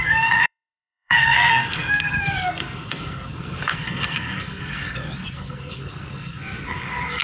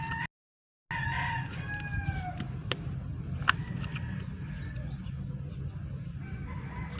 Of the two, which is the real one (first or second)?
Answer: second